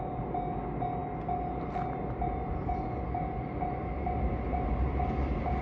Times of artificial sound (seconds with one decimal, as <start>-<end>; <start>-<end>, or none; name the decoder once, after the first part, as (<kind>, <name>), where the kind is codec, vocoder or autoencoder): none